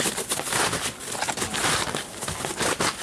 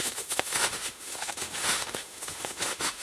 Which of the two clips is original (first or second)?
first